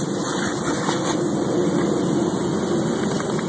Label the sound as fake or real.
real